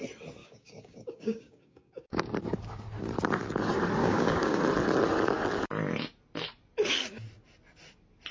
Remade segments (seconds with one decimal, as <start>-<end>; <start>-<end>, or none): 0.4-2.3; 4.0-4.6